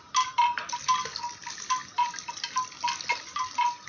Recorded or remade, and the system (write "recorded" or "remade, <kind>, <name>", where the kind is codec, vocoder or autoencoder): recorded